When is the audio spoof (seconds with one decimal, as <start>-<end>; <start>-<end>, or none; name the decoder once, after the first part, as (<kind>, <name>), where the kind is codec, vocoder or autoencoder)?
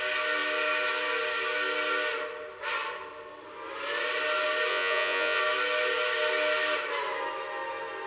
4.7-5.4 (vocoder, Vocos)